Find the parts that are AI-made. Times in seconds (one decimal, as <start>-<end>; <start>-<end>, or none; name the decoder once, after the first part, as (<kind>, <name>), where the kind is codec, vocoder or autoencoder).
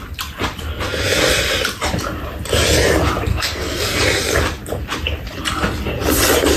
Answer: 3.3-4.0 (codec, SNAC)